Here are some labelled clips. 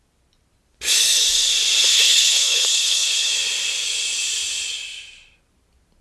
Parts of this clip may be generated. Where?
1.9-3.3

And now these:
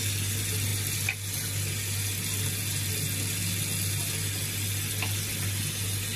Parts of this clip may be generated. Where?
none

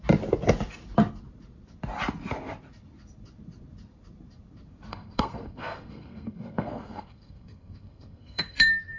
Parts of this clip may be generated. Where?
4.9-9.0